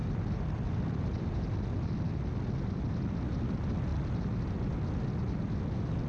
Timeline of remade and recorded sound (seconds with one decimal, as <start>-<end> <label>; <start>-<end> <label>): 0.0-1.4 remade; 1.4-3.9 recorded; 3.9-4.7 remade; 4.7-6.1 recorded